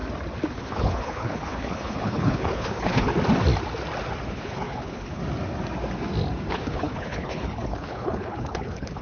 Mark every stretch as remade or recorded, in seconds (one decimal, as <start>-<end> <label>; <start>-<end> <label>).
0.0-0.5 recorded; 0.5-3.1 remade; 3.1-4.3 recorded; 4.3-5.2 remade; 5.2-6.5 recorded; 6.5-9.0 remade